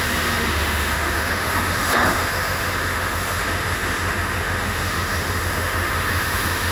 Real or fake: fake